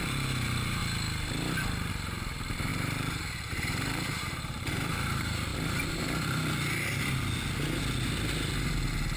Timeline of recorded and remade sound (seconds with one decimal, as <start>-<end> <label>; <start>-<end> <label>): 0.0-0.8 remade; 0.8-1.9 recorded; 1.9-5.5 remade; 5.5-9.2 recorded